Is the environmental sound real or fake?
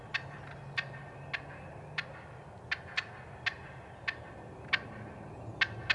real